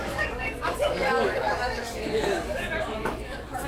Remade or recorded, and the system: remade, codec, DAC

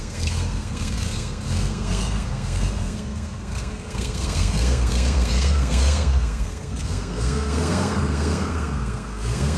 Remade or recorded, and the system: remade, codec, SNAC